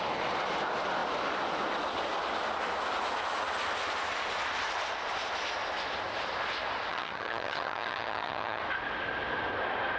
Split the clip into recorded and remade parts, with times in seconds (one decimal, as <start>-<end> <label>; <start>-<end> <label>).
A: 0.0-6.9 recorded; 6.9-8.6 remade; 8.6-10.0 recorded